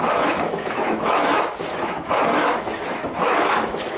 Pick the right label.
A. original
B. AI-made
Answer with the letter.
B